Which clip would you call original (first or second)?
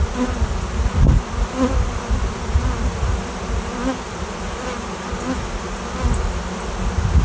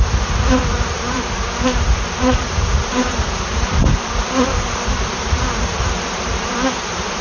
first